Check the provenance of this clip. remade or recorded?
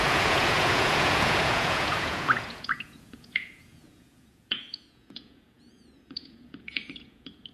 remade